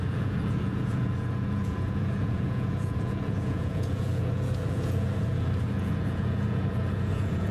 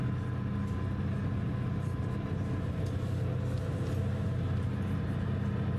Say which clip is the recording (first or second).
second